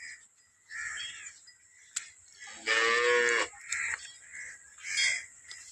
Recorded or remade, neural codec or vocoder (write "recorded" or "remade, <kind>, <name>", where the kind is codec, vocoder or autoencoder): recorded